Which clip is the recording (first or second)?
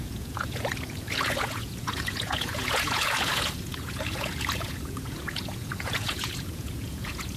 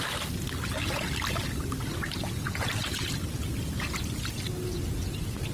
second